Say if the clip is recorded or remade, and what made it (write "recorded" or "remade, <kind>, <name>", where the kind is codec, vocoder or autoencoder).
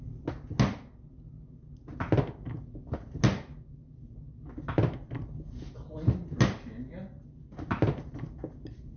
recorded